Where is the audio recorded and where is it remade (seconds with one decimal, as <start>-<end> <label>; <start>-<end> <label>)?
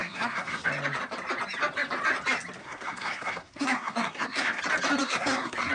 0.0-0.7 remade; 0.7-2.6 recorded; 2.6-4.6 remade; 4.6-5.0 recorded; 5.0-5.7 remade